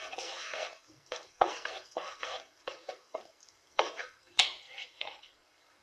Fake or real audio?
fake